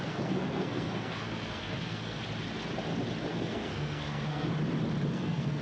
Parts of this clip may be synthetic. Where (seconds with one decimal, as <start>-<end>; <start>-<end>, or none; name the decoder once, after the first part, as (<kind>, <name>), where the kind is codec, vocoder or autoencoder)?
0.0-2.2 (codec, SNAC); 3.3-4.5; 5.1-5.6